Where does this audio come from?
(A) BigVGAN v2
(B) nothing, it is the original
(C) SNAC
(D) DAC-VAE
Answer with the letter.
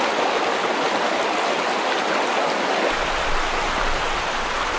B